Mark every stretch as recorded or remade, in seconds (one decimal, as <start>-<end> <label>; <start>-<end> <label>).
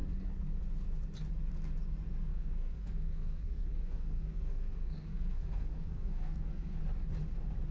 0.0-2.3 recorded; 2.3-6.8 remade; 6.8-7.7 recorded